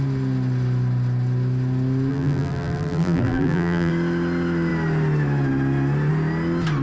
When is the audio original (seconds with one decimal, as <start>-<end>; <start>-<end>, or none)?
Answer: 0.0-2.1; 3.9-6.8